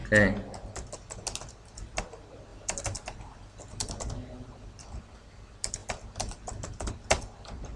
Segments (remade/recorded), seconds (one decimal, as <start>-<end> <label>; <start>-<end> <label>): 0.0-1.5 recorded; 1.5-7.8 remade

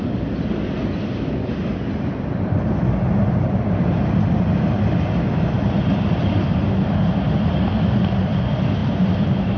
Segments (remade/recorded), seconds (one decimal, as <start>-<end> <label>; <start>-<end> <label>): 0.0-9.6 recorded

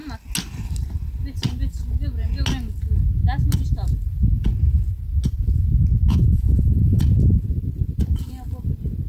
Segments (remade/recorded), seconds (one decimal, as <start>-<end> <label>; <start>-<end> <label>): 0.0-6.1 recorded; 6.1-7.0 remade; 7.0-9.1 recorded

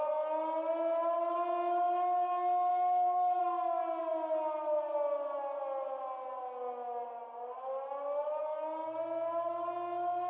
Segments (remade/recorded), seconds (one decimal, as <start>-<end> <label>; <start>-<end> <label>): 0.0-2.7 recorded; 2.7-3.4 remade; 3.4-10.3 recorded

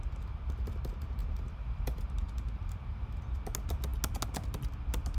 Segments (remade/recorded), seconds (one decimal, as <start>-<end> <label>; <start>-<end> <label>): 0.0-1.2 recorded; 1.2-3.2 remade; 3.2-5.2 recorded

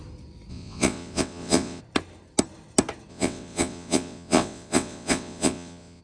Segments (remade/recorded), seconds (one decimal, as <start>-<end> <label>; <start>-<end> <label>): 0.0-0.5 recorded; 0.5-1.8 remade; 1.8-3.1 recorded; 3.1-6.0 remade

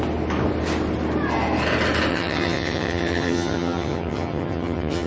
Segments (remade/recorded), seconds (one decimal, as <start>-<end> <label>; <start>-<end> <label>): 0.0-2.1 recorded; 2.1-5.1 remade

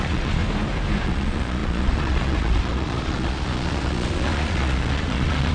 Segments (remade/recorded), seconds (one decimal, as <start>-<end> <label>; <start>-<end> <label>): 0.0-0.4 remade; 0.4-1.0 recorded; 1.0-5.5 remade